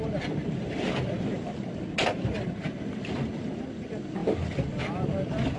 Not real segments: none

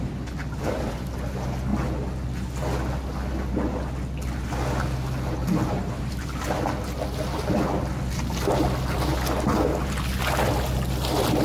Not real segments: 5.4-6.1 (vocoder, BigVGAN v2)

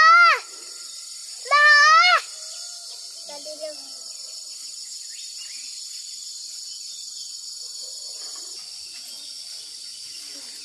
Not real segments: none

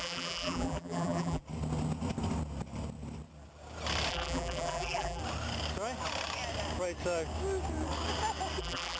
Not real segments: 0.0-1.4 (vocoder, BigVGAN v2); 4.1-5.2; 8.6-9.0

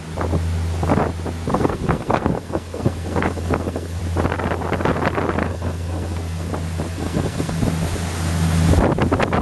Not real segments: 1.5-4.0 (codec, SNAC); 5.4-6.5; 6.9-7.6